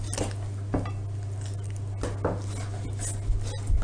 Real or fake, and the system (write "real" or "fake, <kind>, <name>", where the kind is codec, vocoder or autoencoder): real